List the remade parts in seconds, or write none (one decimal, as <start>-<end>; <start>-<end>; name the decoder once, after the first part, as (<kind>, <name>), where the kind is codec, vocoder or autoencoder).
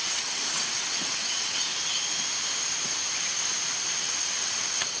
0.0-1.7 (vocoder, WaveNeXt); 4.0-5.0